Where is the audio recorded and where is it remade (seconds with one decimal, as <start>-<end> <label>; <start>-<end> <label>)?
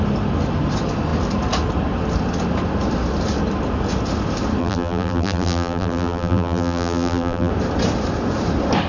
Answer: 0.0-4.6 recorded; 4.6-7.5 remade; 7.5-8.9 recorded